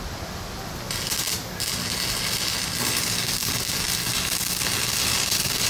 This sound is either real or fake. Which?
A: real